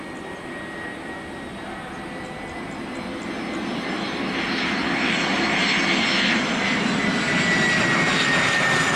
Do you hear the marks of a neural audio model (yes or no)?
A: no